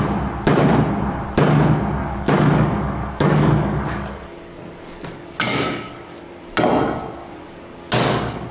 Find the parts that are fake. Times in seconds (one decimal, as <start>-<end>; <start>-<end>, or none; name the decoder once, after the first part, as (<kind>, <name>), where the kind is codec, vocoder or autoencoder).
2.0-6.3 (codec, DAC); 7.2-8.5